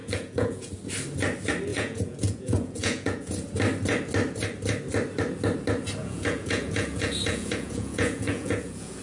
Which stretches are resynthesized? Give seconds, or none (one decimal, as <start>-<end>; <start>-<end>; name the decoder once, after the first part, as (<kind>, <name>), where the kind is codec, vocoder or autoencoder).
0.0-0.7 (vocoder, Vocos); 1.7-3.3; 6.0-9.0